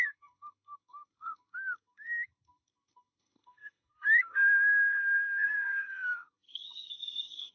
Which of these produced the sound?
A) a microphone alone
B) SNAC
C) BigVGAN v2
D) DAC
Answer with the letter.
B